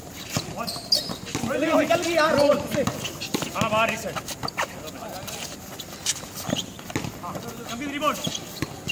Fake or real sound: real